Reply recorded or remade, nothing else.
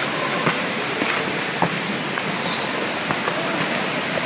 recorded